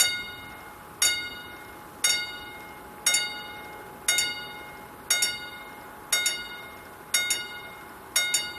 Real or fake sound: real